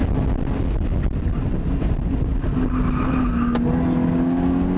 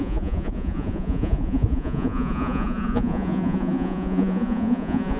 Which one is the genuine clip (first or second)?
first